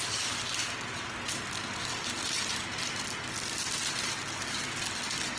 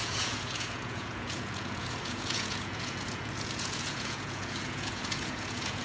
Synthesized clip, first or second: second